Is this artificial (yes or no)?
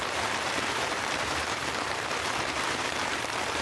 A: yes